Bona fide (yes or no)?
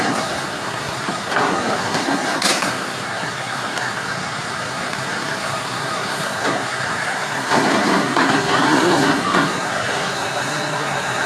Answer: no